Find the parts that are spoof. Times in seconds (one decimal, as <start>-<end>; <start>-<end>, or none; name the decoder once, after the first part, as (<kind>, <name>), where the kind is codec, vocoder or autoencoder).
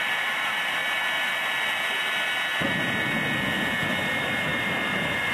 0.0-0.8 (vocoder, BigVGAN v2); 4.0-5.3